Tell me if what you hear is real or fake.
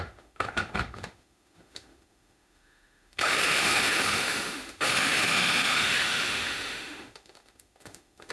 fake